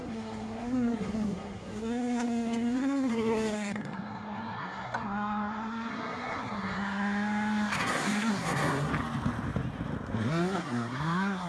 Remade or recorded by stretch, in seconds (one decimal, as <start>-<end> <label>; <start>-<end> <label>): 0.0-8.9 remade; 8.9-10.3 recorded; 10.3-11.5 remade